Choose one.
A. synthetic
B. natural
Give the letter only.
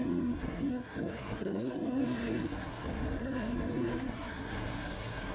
A